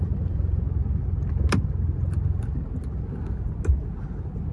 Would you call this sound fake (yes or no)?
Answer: no